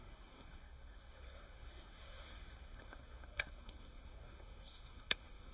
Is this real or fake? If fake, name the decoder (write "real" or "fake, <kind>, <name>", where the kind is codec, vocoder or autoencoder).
fake, codec, SNAC